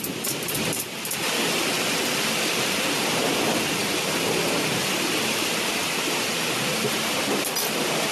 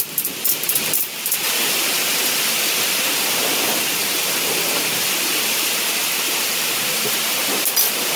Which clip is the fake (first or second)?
second